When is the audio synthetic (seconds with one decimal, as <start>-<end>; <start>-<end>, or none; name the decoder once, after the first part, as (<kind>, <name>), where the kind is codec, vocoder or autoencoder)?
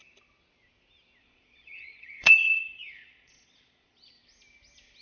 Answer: 1.2-4.2 (vocoder, Vocos)